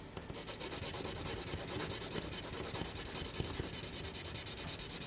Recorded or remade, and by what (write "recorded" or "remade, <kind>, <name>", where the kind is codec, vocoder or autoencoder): recorded